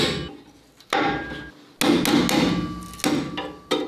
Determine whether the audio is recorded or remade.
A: recorded